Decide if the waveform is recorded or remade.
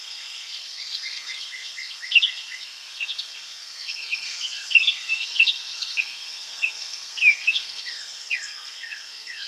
remade